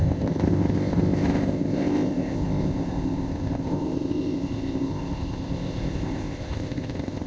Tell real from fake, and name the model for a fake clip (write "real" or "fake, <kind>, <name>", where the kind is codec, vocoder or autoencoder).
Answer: fake, codec, ZipCodec